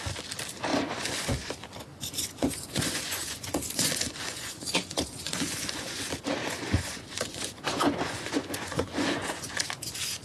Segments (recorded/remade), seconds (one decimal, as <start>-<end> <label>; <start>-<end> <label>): 0.0-0.7 recorded; 0.7-1.5 remade; 1.5-1.9 recorded; 1.9-6.0 remade; 6.0-6.4 recorded; 6.4-10.2 remade